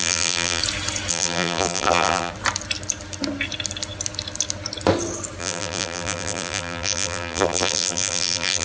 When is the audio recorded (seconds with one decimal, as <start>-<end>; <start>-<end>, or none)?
0.6-1.1; 2.3-5.4